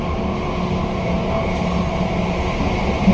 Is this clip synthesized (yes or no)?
no